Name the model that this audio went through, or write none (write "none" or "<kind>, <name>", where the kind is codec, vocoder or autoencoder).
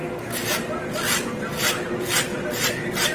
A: none